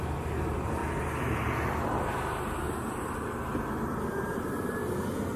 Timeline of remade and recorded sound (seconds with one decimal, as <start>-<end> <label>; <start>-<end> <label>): 0.0-0.8 remade; 0.8-4.0 recorded; 4.0-5.4 remade